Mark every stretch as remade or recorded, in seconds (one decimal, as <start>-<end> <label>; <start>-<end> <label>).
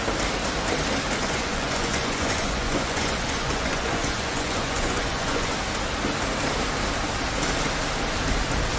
0.0-1.2 recorded; 1.2-5.5 remade; 5.5-8.8 recorded